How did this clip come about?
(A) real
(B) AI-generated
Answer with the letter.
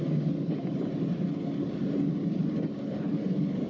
A